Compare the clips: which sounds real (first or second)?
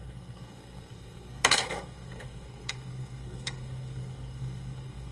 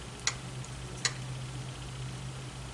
second